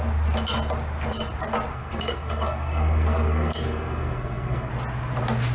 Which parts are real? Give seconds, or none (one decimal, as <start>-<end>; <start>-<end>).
0.0-1.7; 4.7-5.5